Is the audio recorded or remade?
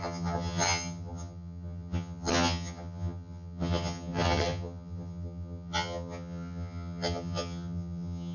remade